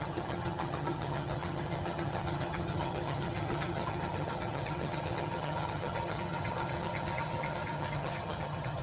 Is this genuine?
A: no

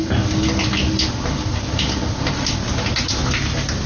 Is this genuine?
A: yes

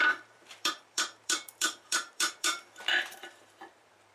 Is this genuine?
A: no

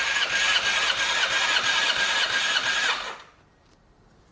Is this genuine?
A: yes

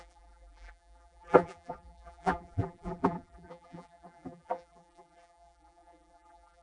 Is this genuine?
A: no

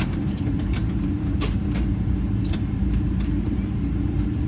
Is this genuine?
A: no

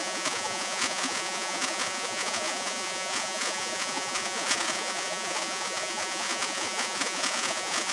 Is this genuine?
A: no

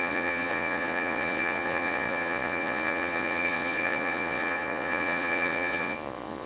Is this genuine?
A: no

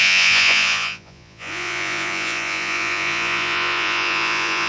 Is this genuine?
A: no